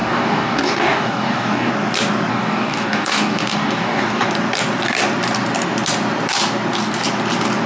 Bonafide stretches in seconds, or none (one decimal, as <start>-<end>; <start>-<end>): 1.7-2.3; 4.3-7.7